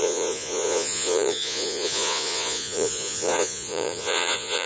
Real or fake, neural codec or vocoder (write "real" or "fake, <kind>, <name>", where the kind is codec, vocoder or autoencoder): fake, vocoder, Vocos